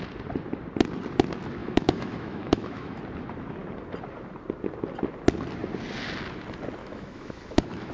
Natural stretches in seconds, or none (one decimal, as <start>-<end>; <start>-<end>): 0.0-1.6; 3.0-6.8